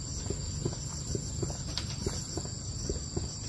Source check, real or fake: real